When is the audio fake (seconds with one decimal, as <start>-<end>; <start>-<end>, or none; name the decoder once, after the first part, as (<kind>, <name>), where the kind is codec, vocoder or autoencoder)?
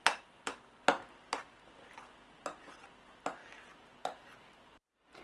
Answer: none